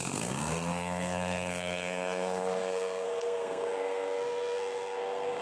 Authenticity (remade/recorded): remade